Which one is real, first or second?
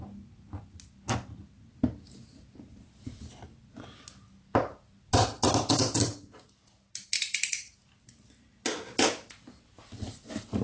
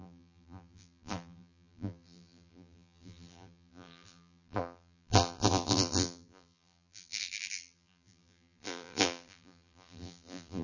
first